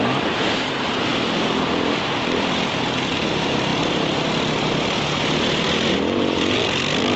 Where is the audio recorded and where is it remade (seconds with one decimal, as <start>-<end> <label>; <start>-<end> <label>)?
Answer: 0.0-3.7 recorded; 3.7-4.3 remade; 4.3-7.2 recorded